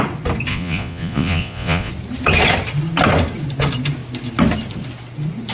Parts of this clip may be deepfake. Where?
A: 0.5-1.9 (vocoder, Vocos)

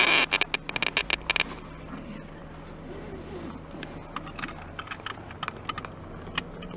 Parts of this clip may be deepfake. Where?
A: none